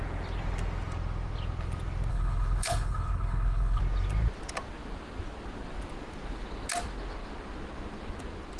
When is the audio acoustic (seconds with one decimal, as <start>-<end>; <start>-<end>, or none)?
0.0-2.1; 3.8-8.6